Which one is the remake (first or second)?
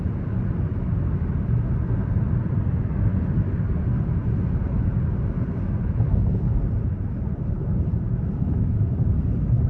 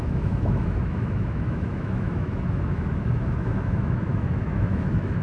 second